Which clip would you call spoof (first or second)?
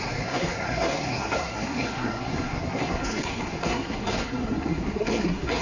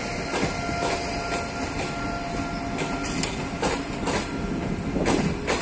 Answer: first